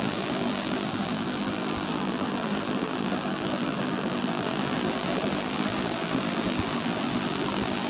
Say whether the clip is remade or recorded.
remade